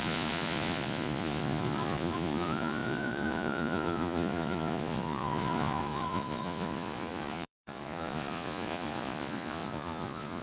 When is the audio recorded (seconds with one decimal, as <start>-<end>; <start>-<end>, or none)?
none

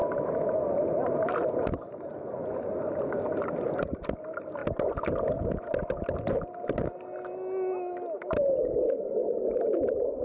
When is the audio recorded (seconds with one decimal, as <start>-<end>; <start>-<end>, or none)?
0.0-10.2

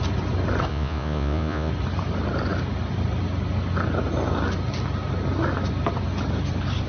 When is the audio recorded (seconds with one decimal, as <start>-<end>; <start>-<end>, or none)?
0.0-0.7; 1.7-6.9